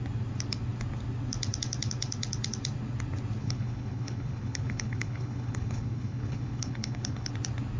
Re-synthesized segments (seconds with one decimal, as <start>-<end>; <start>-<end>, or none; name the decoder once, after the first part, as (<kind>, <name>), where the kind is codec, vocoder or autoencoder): 3.4-7.3 (codec, HILCodec)